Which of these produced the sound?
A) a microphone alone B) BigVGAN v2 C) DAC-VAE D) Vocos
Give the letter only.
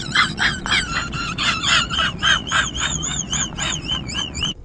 D